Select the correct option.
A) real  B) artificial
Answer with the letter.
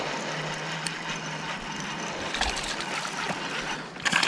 A